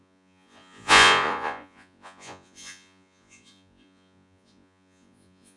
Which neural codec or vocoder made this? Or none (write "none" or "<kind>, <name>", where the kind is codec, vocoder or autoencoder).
vocoder, Vocos